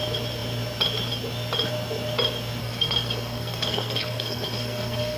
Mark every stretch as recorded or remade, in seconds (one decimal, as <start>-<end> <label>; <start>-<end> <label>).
0.0-2.6 recorded; 2.6-5.2 remade